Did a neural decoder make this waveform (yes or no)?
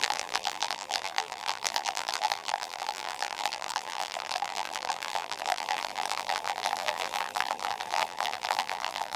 yes